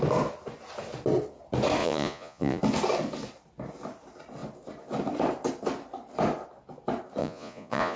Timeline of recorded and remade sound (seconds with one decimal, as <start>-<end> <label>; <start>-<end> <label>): 0.0-1.8 recorded; 1.8-2.6 remade; 2.6-7.2 recorded; 7.2-8.0 remade